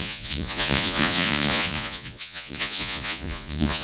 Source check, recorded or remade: remade